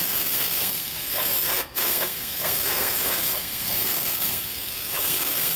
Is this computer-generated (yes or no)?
yes